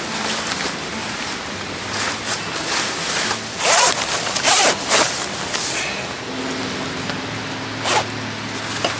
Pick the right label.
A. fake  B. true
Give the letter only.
B